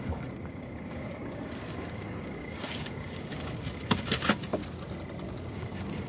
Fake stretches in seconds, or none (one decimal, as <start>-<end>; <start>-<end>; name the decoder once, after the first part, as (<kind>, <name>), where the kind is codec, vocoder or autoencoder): 0.0-4.6 (codec, DAC); 5.5-6.1